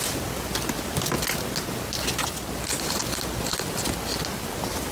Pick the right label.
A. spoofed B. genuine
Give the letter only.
B